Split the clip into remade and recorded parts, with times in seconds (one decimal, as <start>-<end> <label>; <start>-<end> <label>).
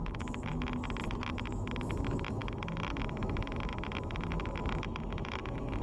0.0-0.5 remade; 0.5-1.3 recorded; 1.3-5.8 remade